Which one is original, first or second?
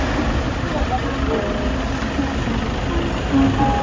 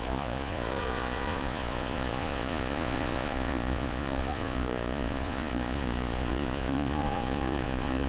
first